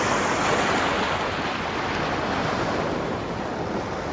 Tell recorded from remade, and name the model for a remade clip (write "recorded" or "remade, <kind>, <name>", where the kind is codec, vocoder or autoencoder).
recorded